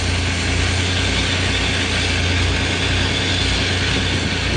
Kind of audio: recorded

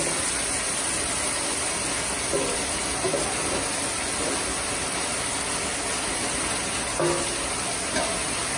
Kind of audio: recorded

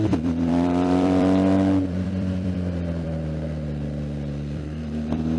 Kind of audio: remade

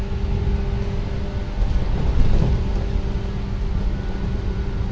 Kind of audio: recorded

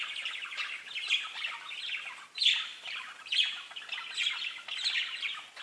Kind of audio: recorded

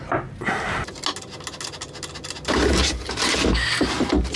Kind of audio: recorded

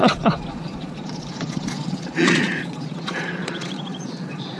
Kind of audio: remade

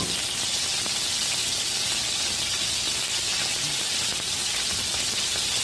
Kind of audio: recorded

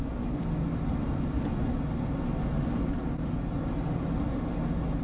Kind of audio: recorded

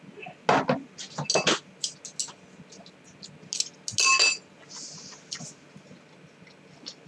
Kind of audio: recorded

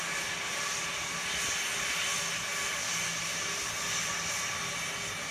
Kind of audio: recorded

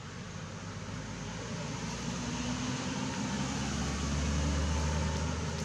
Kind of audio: recorded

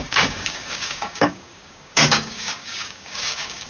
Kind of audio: remade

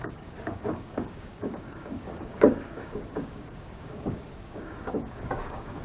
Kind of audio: remade